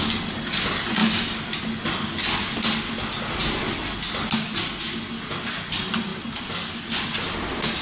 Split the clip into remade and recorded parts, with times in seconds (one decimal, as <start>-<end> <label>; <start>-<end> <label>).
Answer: 0.0-7.8 recorded